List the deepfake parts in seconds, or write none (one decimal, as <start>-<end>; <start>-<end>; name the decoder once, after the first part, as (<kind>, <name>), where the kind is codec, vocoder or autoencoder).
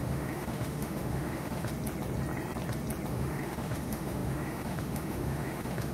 0.0-1.7 (autoencoder, DAC-VAE); 3.1-5.9